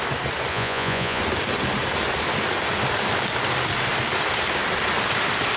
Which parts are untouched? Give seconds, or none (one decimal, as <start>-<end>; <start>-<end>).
0.0-0.5; 1.2-5.6